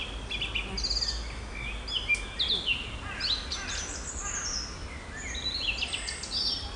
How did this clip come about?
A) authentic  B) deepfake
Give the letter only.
A